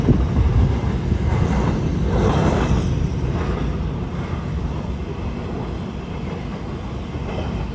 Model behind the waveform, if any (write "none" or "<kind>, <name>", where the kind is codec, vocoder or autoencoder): none